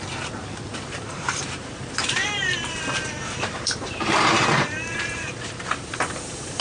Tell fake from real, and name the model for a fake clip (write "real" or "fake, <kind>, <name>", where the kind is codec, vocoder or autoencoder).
fake, vocoder, BigVGAN v2